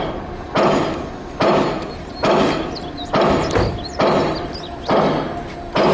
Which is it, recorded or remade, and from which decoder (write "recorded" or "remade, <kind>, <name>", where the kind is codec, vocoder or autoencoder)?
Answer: recorded